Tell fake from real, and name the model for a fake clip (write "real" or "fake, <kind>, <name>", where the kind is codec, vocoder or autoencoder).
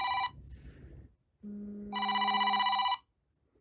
real